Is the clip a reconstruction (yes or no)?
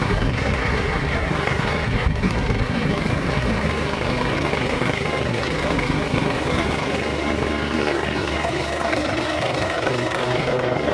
yes